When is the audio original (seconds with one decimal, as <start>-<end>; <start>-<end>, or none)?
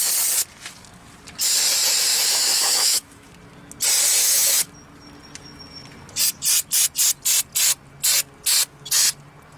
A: 0.0-2.1; 3.3-4.2; 4.7-9.6